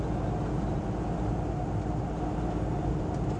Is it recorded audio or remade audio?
recorded